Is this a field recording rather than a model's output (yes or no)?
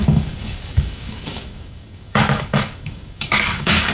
no